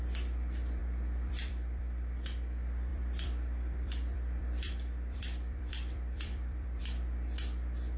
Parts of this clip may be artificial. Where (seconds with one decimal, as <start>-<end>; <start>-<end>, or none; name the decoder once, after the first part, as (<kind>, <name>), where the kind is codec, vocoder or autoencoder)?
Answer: 0.8-1.8 (vocoder, BigVGAN v2); 2.9-6.8